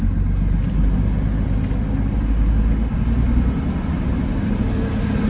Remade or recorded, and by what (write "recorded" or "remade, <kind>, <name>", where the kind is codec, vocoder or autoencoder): recorded